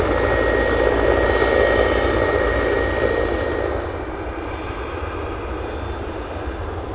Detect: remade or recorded recorded